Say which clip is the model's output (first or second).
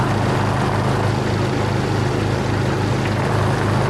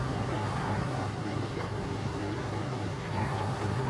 second